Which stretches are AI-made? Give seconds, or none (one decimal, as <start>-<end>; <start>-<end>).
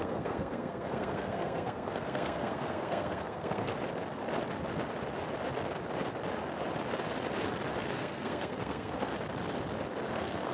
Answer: 0.0-3.7; 8.0-9.1; 10.1-10.5